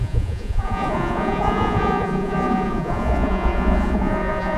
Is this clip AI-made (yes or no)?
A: yes